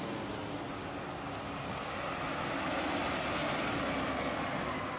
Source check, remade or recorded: recorded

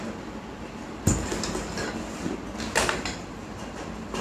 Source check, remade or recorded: recorded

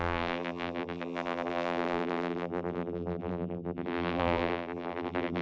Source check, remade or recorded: remade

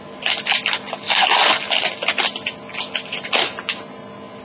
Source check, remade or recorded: recorded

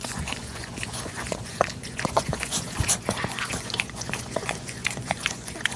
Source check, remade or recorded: remade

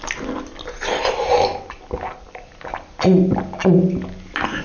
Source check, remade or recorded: recorded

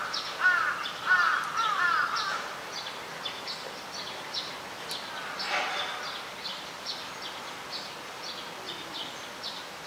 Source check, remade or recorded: recorded